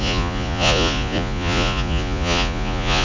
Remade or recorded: remade